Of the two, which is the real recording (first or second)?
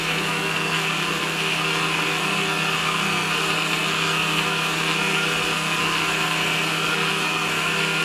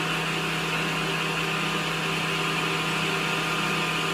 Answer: second